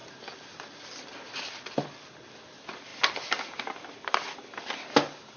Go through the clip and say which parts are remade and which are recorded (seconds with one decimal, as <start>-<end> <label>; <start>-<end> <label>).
0.0-5.4 recorded